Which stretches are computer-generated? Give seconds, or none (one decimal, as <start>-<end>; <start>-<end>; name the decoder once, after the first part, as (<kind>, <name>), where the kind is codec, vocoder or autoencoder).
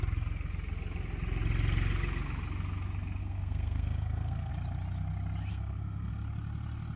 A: 3.2-4.5 (codec, SNAC); 5.5-6.1